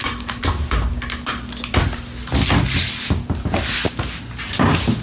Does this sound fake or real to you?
real